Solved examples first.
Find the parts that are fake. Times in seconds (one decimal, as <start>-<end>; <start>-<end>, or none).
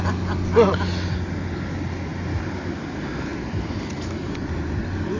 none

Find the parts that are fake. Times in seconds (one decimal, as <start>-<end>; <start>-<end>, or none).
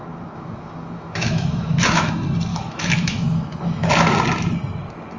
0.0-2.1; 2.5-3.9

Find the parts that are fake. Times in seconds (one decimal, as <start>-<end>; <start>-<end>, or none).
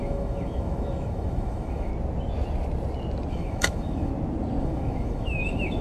0.0-1.9; 3.3-4.1; 4.6-5.8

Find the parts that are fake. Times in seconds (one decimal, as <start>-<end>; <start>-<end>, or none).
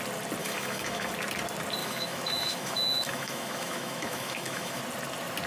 0.4-1.1; 1.8-4.8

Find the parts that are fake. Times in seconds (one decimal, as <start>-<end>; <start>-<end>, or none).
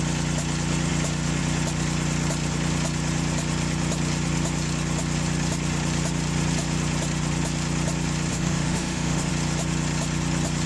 8.3-9.3